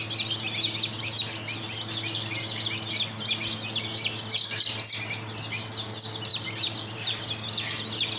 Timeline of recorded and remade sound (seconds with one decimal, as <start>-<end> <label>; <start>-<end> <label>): 0.0-6.3 recorded; 6.3-7.2 remade; 7.2-8.2 recorded

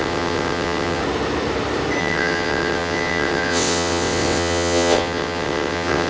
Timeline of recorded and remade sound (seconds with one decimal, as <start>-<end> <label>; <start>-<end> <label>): 0.0-1.0 remade; 1.0-2.0 recorded; 2.0-6.1 remade